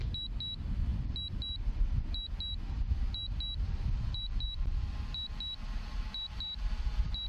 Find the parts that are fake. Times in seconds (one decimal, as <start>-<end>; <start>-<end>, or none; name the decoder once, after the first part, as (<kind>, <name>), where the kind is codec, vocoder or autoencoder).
none